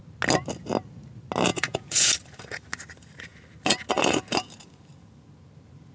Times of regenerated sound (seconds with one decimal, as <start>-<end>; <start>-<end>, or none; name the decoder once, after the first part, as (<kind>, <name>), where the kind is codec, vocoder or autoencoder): 1.5-2.1 (vocoder, Vocos)